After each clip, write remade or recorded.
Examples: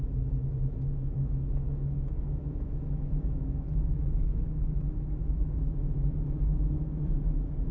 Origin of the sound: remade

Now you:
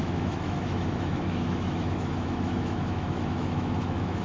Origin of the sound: remade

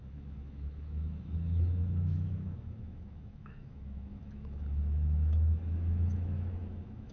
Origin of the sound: remade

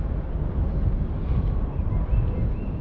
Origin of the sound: recorded